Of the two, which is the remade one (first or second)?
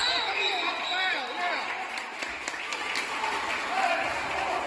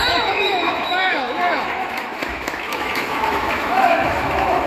second